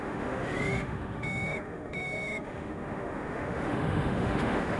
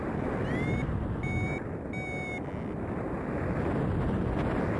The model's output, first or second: first